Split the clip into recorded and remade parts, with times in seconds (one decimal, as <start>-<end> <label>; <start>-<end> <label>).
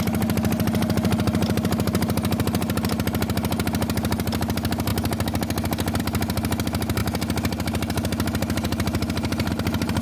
0.0-10.0 recorded